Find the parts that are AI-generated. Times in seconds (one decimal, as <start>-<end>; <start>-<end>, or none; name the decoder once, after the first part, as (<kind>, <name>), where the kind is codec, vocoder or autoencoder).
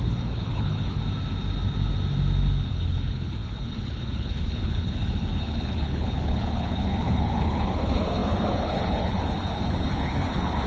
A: 0.0-1.0 (codec, HILCodec); 2.7-10.7